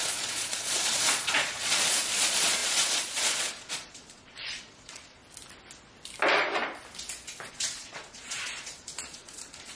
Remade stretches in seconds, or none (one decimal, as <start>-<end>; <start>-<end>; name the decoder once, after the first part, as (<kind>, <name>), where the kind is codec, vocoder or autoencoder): 0.0-5.2 (vocoder, Vocos); 7.5-9.8

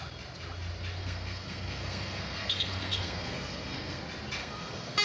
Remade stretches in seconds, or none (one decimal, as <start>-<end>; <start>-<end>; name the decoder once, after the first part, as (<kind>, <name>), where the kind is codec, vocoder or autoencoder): 1.0-4.0 (codec, SNAC); 4.4-5.0

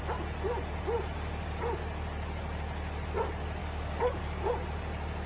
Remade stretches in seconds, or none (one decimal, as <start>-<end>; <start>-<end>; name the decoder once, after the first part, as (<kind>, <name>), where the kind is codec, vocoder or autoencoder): 3.6-4.5 (codec, DAC)

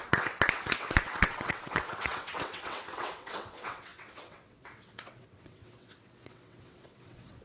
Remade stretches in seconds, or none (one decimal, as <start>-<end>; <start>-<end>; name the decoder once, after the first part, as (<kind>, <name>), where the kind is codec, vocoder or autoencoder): 0.0-7.4 (vocoder, WaveNeXt)

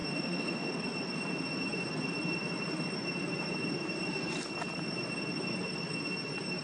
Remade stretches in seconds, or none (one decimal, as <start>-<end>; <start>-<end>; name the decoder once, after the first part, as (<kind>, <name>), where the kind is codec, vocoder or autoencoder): 0.0-0.8 (autoencoder, DAC-VAE)

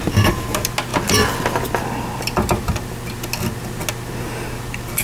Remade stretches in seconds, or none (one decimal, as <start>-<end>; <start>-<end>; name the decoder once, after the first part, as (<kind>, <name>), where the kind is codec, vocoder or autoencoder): none